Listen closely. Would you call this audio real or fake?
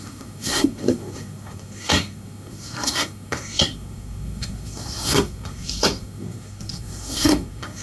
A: fake